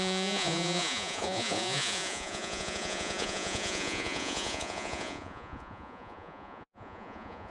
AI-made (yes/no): yes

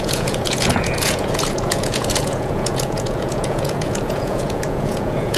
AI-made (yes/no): yes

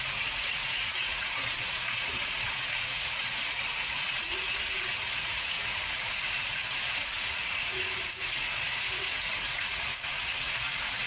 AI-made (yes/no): yes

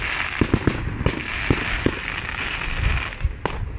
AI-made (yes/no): no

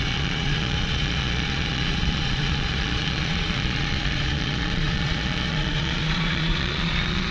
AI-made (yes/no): yes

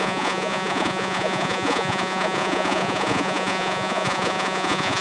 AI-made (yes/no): yes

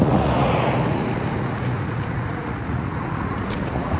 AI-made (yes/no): yes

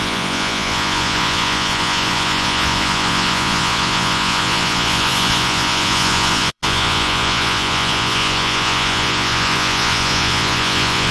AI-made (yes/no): yes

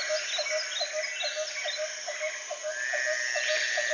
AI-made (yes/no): no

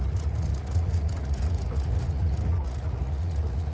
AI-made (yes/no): yes